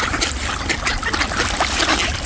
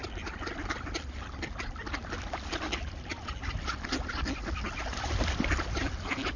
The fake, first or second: first